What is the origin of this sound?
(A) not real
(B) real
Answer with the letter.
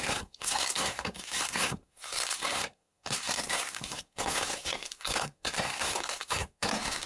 A